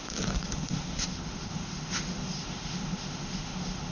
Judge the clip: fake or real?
fake